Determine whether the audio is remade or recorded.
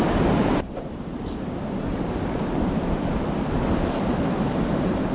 remade